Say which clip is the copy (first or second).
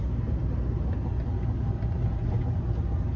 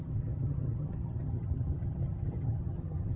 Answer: second